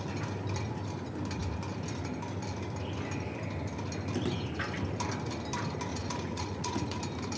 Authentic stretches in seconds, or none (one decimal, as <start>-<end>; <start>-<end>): 0.0-5.9; 7.0-7.4